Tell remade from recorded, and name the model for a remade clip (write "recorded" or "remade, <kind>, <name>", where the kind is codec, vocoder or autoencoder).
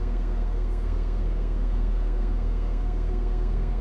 remade, codec, SNAC